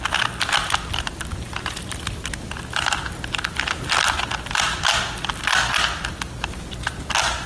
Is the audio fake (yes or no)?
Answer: no